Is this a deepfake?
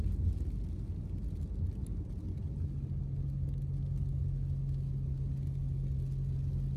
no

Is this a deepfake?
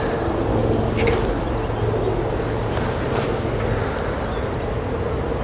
no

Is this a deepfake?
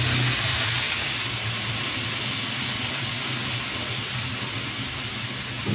no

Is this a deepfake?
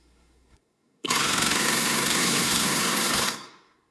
yes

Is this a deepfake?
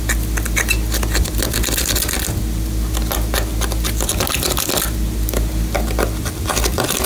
no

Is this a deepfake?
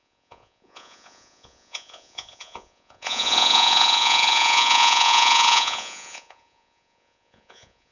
yes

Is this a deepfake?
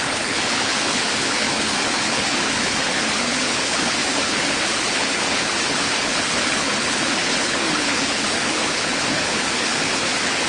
yes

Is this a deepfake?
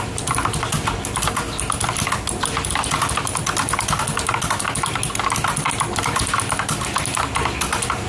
no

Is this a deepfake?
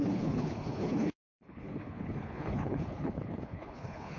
yes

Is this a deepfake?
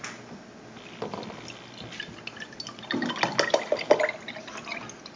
no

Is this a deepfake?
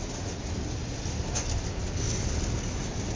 no